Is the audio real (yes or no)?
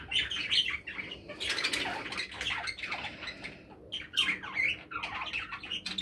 yes